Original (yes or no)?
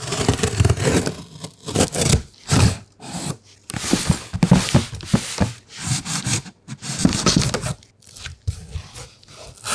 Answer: yes